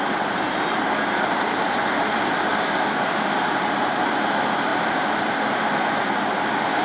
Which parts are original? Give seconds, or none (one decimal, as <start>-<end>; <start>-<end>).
0.0-2.5; 3.2-6.8